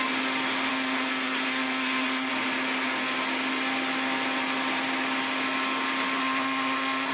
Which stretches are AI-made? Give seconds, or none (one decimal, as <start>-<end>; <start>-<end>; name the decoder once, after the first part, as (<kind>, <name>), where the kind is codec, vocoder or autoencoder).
0.7-2.3 (codec, SNAC); 6.2-7.1